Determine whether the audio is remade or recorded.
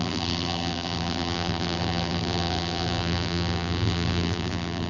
remade